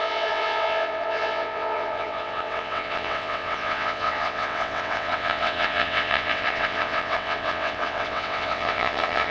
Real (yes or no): no